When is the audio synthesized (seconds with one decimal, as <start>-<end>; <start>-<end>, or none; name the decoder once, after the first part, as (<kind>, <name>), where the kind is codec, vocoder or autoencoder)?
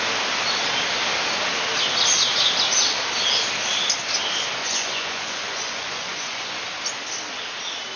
4.6-6.6 (vocoder, Vocos)